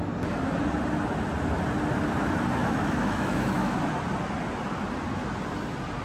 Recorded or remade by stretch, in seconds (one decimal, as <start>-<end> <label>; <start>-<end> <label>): 0.0-2.6 recorded; 2.6-3.8 remade; 3.8-6.0 recorded